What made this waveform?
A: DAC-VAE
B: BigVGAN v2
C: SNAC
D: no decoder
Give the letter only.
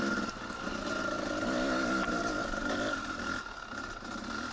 D